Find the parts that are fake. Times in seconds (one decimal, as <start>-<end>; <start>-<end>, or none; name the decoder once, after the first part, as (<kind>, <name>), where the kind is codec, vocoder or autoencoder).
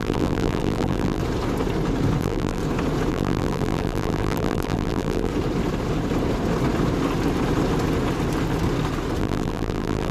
0.0-1.2 (vocoder, BigVGAN v2); 2.2-2.6; 3.1-5.3; 9.2-10.1